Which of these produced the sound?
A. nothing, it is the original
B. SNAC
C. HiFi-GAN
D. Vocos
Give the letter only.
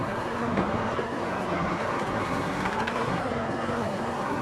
B